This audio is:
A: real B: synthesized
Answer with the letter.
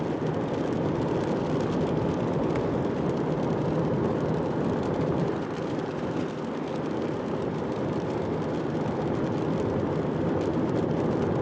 B